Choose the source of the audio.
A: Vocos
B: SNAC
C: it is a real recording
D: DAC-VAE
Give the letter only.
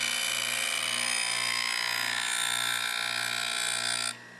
C